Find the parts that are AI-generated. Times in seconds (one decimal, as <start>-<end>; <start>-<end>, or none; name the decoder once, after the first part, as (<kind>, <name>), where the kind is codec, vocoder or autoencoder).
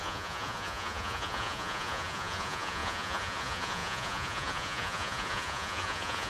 0.0-6.3 (vocoder, Vocos)